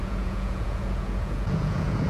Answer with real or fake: fake